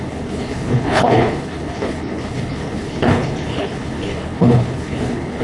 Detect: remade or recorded remade